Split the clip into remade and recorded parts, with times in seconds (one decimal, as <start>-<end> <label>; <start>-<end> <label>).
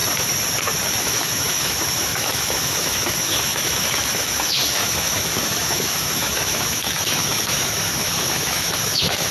0.0-1.0 recorded; 1.0-9.3 remade